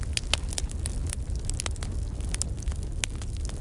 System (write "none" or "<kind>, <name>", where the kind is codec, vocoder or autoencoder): none